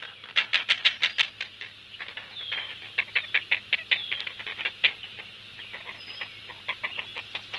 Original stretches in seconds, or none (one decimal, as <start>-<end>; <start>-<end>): 0.0-4.5; 5.6-7.6